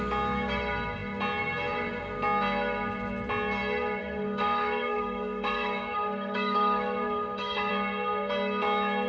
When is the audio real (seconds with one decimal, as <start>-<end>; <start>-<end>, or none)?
0.0-4.0; 7.7-9.1